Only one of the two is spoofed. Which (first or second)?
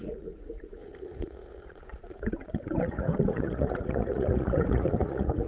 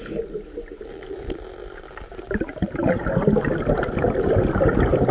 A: first